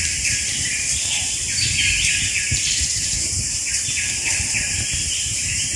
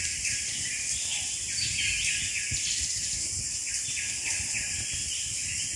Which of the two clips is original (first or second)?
second